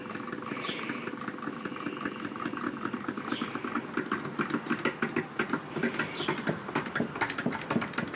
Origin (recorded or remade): recorded